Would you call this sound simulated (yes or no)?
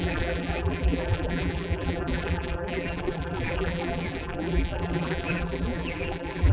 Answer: yes